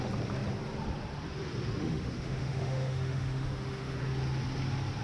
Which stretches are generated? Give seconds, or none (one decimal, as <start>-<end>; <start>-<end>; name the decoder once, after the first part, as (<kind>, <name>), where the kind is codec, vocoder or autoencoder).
1.8-4.0 (autoencoder, DAC-VAE)